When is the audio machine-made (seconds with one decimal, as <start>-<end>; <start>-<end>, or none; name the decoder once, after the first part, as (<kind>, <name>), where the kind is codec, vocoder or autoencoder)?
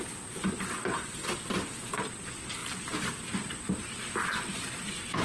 none